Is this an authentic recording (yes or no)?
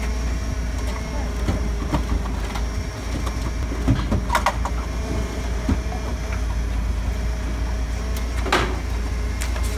yes